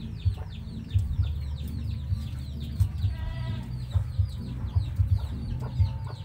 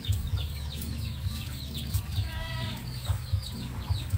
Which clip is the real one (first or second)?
first